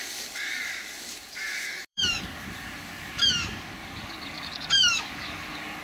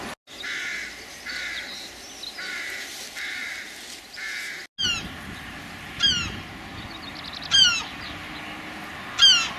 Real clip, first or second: second